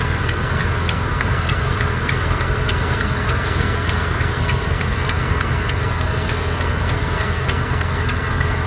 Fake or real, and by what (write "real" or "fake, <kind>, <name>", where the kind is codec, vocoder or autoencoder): fake, codec, SNAC